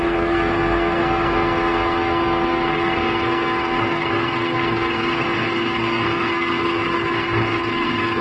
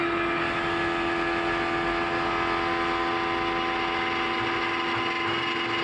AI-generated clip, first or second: first